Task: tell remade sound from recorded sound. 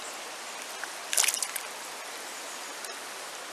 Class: recorded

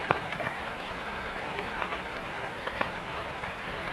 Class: remade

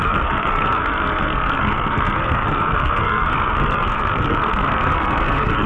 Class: remade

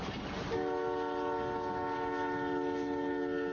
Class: recorded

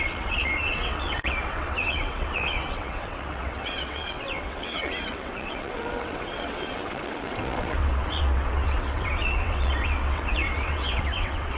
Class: remade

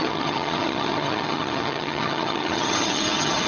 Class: remade